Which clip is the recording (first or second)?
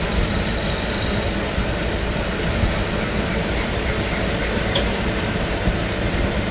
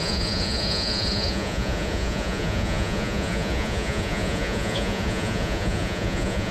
first